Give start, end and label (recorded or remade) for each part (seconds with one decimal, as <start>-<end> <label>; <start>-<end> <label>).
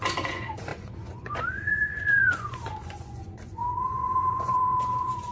0.0-5.3 remade